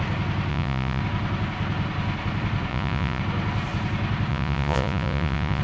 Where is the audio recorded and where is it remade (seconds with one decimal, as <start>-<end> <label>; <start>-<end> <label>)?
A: 0.0-0.5 recorded; 0.5-1.0 remade; 1.0-2.7 recorded; 2.7-3.2 remade; 3.2-4.3 recorded; 4.3-5.6 remade